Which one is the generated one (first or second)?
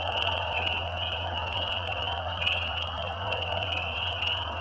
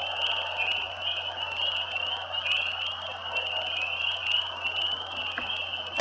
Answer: first